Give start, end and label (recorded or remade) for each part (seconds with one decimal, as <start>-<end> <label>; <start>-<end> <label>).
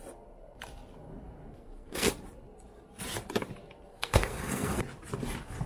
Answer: 0.0-1.5 recorded; 1.5-2.1 remade; 2.1-3.9 recorded; 3.9-4.8 remade; 4.8-5.7 recorded